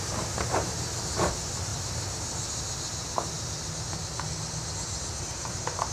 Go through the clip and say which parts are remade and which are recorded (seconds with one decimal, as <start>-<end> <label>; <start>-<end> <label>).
0.0-5.9 recorded